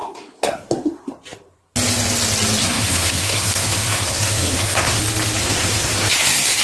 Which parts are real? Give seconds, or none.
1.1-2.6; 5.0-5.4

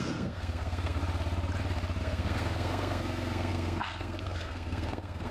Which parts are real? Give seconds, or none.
1.0-2.0